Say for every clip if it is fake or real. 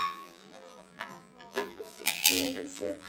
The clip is fake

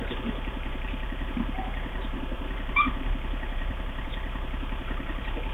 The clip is fake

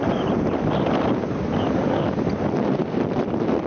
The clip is fake